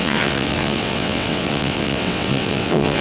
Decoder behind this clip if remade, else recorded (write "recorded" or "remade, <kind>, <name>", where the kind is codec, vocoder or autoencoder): remade, vocoder, WaveNeXt